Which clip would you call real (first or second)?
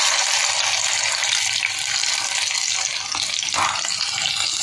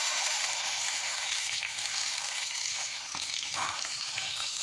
first